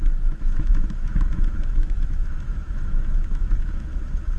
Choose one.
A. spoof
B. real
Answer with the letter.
A